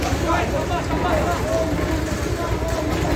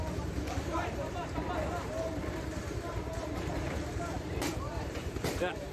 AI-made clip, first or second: second